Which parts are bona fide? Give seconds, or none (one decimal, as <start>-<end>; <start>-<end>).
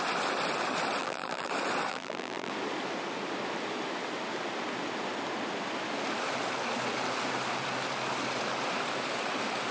0.0-1.0; 1.5-1.9; 2.5-9.7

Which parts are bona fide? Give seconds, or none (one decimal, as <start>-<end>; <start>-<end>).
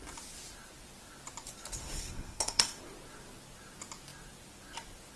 0.0-1.8; 2.8-5.2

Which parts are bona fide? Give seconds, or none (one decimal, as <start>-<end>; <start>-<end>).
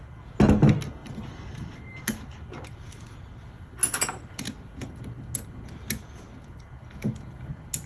0.0-7.9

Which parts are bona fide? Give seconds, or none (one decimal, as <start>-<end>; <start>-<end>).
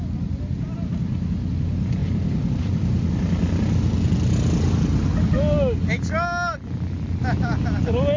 0.0-2.0; 2.8-8.2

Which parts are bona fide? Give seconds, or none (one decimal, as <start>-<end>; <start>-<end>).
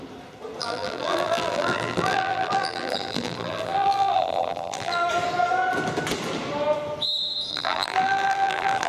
0.0-0.6; 5.0-7.5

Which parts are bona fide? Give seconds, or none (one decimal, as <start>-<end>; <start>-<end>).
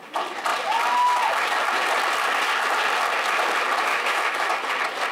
0.0-3.9; 4.5-5.1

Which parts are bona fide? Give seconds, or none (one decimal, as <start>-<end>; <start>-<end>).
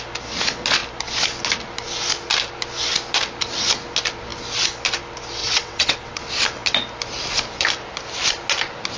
0.0-5.4; 6.3-9.0